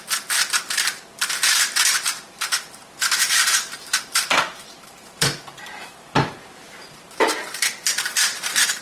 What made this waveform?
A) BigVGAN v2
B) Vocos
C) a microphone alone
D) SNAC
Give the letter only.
A